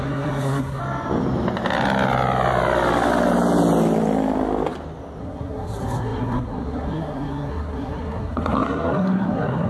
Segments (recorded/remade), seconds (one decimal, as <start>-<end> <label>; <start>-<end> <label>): 0.0-0.8 remade; 0.8-5.2 recorded; 5.2-9.7 remade